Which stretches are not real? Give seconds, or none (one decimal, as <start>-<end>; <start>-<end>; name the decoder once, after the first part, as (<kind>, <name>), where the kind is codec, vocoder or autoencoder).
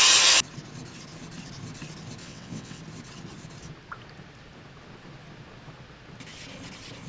2.2-2.8 (vocoder, WaveNeXt)